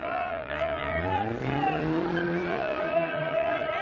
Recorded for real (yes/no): no